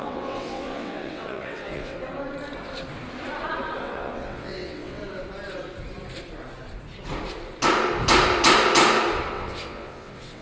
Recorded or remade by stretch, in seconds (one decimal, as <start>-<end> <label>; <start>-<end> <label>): 0.0-2.0 remade; 2.0-3.8 recorded; 3.8-5.0 remade; 5.0-9.3 recorded; 9.3-10.4 remade